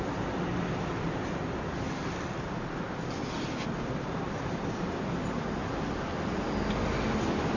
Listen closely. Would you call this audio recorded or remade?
recorded